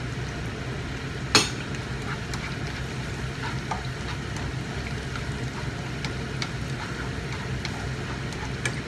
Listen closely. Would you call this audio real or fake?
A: real